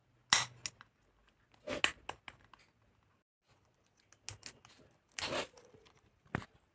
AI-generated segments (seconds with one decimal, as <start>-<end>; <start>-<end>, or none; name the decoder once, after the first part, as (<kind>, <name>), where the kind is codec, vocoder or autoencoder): none